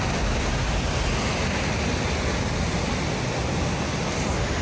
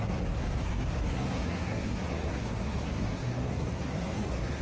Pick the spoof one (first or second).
second